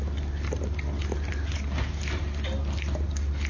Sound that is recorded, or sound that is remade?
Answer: recorded